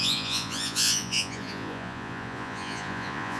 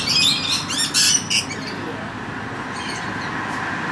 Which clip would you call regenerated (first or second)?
first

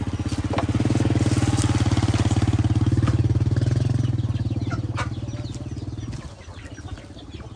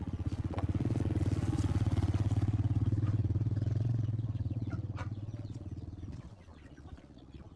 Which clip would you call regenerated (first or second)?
second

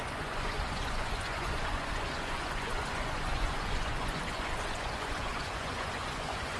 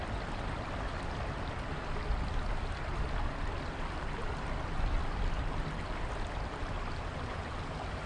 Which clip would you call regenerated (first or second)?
first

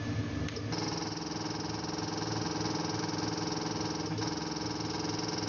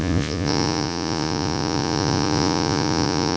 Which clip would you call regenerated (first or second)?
second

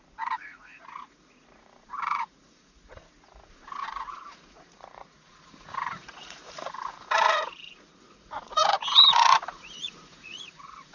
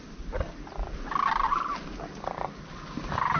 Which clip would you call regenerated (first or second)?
first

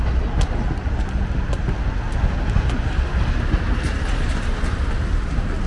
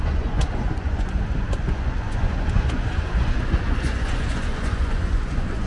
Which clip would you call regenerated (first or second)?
second